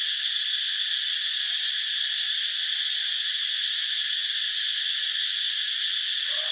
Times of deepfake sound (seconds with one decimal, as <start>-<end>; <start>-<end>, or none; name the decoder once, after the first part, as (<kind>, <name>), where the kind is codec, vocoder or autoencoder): none